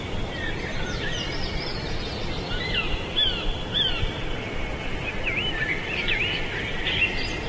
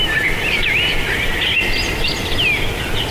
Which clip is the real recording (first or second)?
second